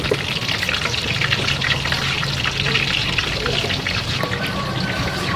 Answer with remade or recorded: recorded